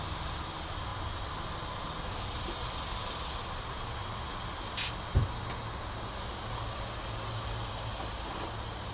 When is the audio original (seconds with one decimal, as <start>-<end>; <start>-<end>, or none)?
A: 0.0-8.9